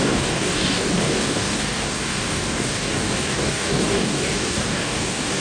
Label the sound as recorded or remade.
remade